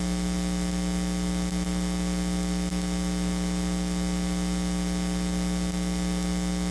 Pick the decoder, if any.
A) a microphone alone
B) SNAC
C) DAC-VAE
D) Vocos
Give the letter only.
A